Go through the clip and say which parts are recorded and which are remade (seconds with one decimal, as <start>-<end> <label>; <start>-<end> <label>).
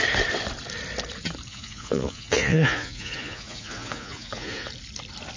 0.0-1.5 recorded; 1.5-4.7 remade; 4.7-5.4 recorded